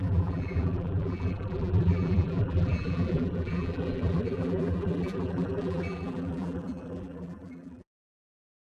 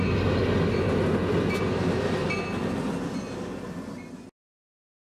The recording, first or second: second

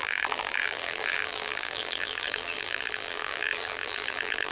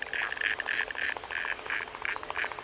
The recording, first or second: second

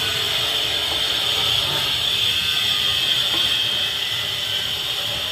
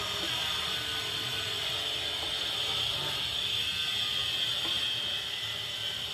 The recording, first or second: second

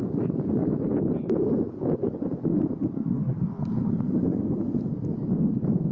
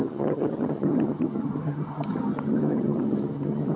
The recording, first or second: first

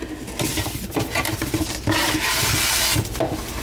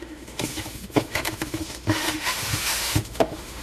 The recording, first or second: first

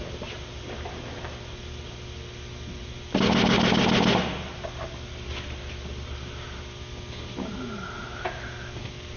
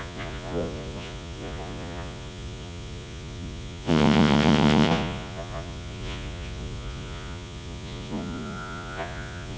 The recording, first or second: first